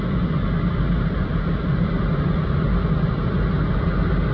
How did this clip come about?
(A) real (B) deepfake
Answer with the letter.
A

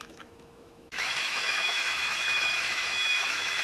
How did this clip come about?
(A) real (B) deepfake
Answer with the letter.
B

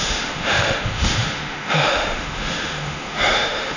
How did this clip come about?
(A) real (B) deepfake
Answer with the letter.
B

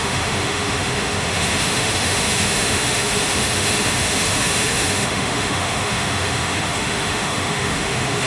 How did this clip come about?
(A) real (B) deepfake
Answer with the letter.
B